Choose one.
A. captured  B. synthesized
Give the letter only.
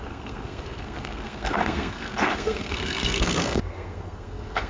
B